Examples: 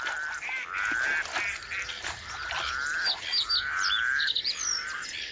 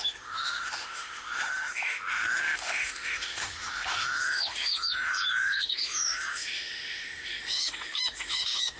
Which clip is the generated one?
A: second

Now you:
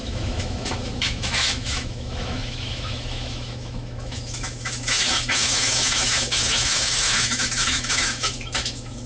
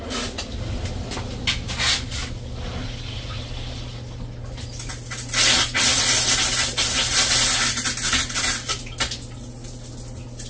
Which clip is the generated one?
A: first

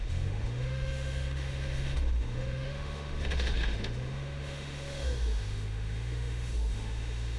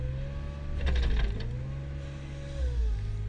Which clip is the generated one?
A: first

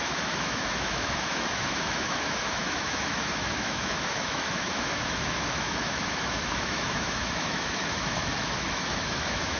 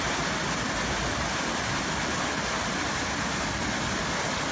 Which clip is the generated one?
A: first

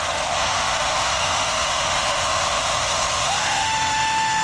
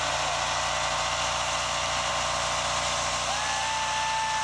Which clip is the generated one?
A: first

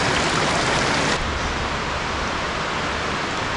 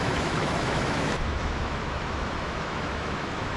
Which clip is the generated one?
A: second